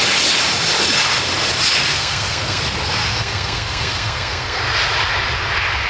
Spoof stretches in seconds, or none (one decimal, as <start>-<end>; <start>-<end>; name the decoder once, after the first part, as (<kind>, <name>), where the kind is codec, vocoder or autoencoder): 1.9-2.6 (codec, SNAC); 3.0-4.6